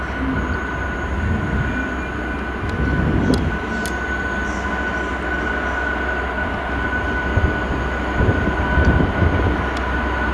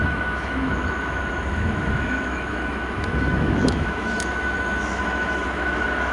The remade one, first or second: second